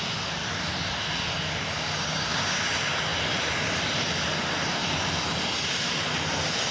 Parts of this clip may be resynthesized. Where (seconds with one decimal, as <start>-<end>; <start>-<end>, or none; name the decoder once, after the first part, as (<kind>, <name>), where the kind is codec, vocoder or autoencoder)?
1.9-2.6 (codec, DAC)